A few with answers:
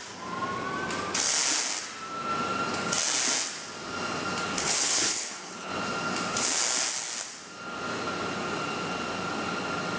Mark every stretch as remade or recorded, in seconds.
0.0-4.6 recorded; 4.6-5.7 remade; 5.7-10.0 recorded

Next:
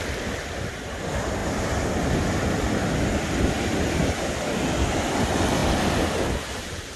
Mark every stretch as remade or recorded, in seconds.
0.0-7.0 recorded

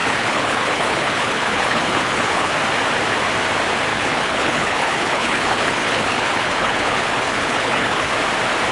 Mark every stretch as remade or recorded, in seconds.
0.0-2.5 remade; 2.5-3.9 recorded; 3.9-8.1 remade; 8.1-8.7 recorded

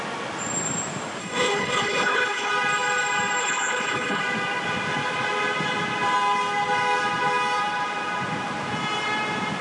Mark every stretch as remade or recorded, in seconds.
0.0-1.2 recorded; 1.2-2.5 remade; 2.5-3.4 recorded; 3.4-4.2 remade; 4.2-9.6 recorded

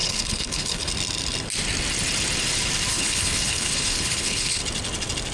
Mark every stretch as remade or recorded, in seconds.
0.0-0.9 remade; 0.9-2.9 recorded; 2.9-4.6 remade; 4.6-5.3 recorded